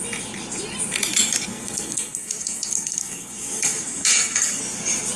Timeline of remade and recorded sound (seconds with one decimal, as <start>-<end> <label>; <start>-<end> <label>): 0.0-1.5 recorded; 1.5-4.6 remade; 4.6-5.2 recorded